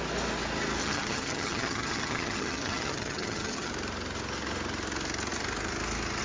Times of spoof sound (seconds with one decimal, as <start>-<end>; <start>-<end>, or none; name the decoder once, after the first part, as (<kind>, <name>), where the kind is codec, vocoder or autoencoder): 0.8-3.7 (vocoder, HiFi-GAN)